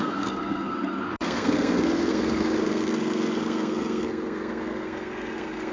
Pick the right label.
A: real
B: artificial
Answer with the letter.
B